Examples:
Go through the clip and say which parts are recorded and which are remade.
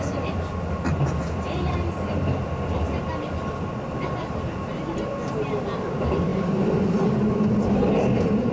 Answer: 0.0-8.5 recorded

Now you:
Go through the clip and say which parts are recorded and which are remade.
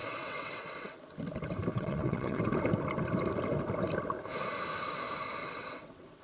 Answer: 0.0-1.0 remade; 1.0-1.7 recorded; 1.7-2.4 remade; 2.4-5.4 recorded; 5.4-6.2 remade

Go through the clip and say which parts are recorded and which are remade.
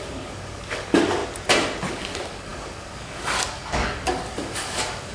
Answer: 0.0-1.2 remade; 1.2-1.9 recorded; 1.9-5.1 remade